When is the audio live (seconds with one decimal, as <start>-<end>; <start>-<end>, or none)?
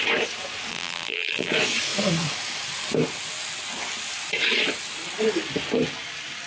0.0-0.7; 1.5-6.5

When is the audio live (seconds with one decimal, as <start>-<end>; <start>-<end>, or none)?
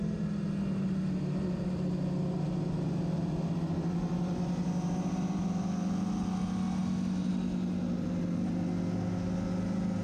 0.0-10.0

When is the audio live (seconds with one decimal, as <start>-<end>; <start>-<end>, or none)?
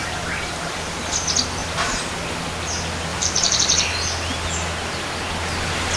0.0-1.6; 2.2-3.1; 3.8-6.0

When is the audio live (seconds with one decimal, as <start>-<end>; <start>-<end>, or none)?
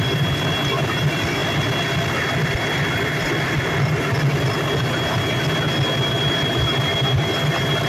1.4-6.1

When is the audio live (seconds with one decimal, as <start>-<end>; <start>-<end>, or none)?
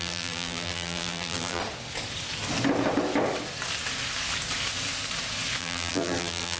1.6-5.6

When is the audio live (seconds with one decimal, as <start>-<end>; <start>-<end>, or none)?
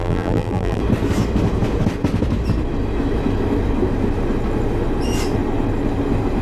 0.8-6.4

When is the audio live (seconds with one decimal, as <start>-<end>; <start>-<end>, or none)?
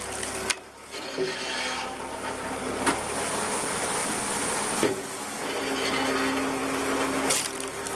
0.0-4.0; 5.9-8.0